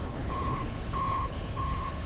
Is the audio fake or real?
fake